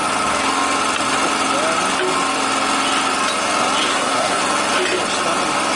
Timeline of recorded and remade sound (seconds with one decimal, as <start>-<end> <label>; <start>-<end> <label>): 0.0-3.9 recorded; 3.9-4.4 remade; 4.4-5.8 recorded